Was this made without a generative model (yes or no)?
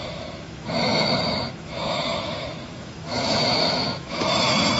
no